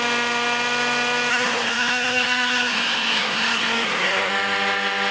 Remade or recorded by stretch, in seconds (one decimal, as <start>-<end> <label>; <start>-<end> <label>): 0.0-1.3 recorded; 1.3-4.3 remade; 4.3-5.1 recorded